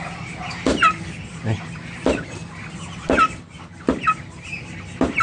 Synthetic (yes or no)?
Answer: no